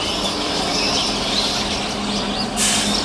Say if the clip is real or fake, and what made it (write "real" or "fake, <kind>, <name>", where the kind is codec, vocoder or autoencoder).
real